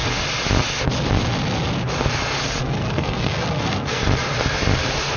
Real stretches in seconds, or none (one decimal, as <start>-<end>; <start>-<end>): 0.0-2.6; 4.0-5.2